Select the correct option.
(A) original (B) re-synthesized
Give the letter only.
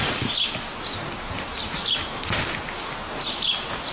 A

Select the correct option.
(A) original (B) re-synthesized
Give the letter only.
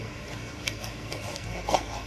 B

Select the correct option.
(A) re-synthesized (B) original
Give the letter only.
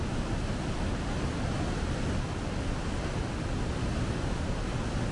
B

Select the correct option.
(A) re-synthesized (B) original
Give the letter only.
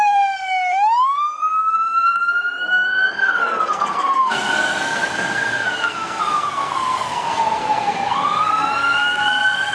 A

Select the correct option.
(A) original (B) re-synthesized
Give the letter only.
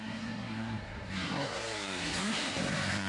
B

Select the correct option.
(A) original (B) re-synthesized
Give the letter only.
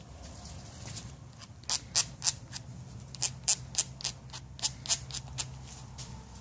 A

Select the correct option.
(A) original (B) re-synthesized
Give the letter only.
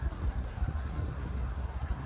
B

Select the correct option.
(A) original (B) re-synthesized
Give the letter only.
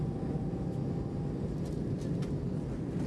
A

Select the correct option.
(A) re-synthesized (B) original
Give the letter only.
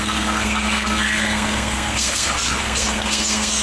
A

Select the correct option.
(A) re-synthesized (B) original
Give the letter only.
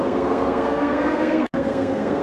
A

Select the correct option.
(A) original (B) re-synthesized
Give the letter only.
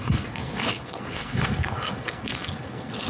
B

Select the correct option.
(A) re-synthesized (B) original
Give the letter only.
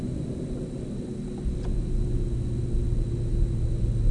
B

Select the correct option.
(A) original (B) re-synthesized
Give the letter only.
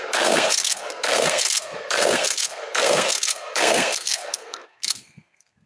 B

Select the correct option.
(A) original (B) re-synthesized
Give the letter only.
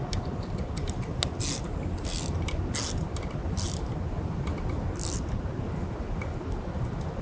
A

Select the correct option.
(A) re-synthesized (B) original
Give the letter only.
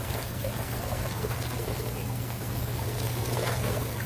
A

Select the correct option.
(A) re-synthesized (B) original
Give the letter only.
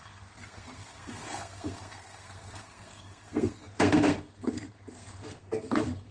A